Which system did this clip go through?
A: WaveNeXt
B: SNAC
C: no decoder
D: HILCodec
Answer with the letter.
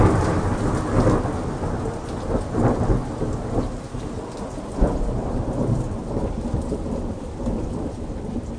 C